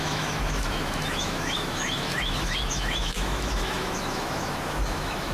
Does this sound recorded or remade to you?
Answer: remade